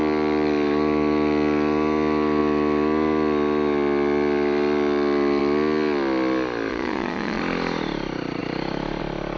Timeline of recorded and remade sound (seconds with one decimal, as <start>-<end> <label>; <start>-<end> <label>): 0.0-6.7 recorded; 6.7-7.4 remade; 7.4-9.4 recorded